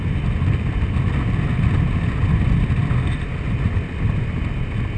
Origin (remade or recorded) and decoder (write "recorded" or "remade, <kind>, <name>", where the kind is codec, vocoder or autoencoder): recorded